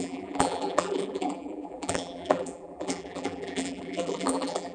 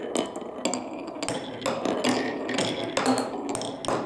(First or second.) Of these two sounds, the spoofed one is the first